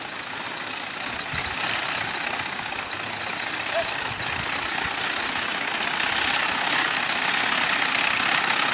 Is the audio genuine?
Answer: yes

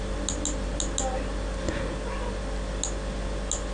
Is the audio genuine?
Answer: yes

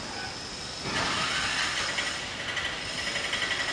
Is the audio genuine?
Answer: yes